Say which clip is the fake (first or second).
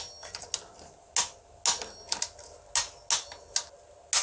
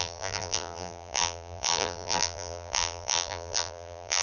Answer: second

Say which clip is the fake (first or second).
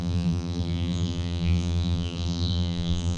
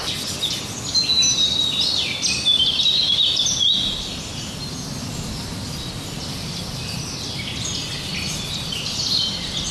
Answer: first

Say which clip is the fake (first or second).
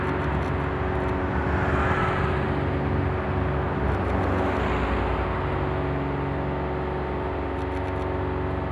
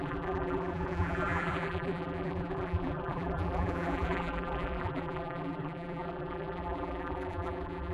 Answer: second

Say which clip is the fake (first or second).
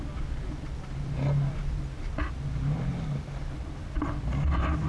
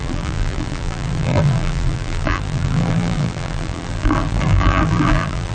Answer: second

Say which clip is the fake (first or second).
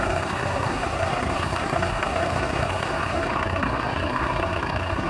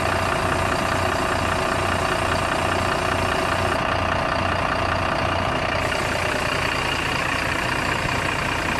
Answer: first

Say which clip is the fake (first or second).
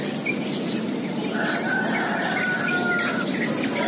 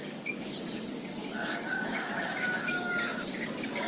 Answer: second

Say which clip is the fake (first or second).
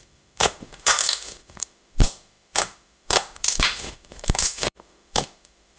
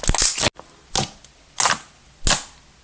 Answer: first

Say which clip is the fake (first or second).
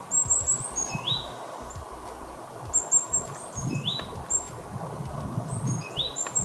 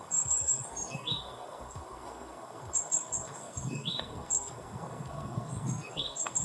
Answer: second